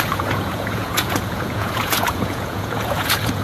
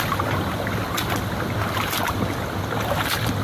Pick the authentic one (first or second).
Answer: second